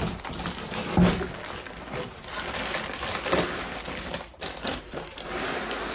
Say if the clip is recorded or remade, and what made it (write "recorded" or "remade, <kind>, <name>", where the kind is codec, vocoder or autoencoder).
recorded